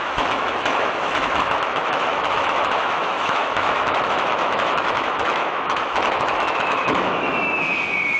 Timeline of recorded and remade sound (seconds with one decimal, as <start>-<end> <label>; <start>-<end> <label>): 0.0-8.2 remade